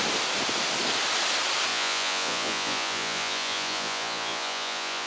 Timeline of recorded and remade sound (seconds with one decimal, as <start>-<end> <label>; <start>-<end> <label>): 0.0-1.7 recorded; 1.7-5.1 remade

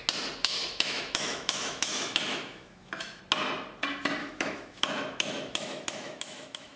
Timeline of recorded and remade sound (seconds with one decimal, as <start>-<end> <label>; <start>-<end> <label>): 0.0-0.4 recorded; 0.4-3.2 remade; 3.2-4.2 recorded; 4.2-6.8 remade

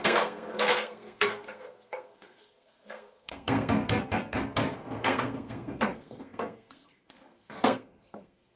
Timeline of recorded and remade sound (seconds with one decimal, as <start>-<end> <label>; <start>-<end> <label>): 0.0-8.6 remade

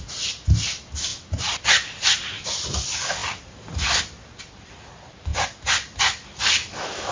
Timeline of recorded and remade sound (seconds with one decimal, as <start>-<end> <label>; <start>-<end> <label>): 0.0-7.1 recorded